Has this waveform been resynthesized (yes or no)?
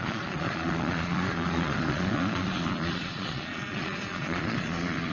yes